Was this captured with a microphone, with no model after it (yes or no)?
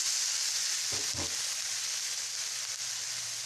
yes